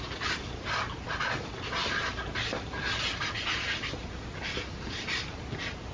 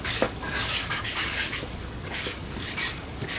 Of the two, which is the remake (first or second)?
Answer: second